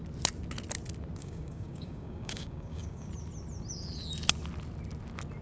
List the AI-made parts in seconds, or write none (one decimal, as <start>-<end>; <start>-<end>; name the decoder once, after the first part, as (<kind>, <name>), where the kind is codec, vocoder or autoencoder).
1.2-3.1 (codec, DAC)